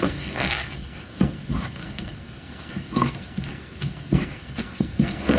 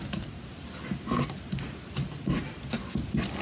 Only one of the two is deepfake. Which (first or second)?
first